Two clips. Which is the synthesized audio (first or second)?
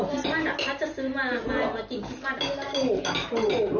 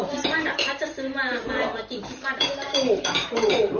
second